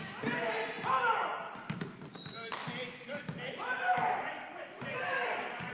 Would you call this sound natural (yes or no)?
yes